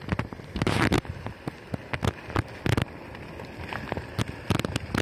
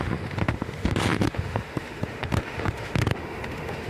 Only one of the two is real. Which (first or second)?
first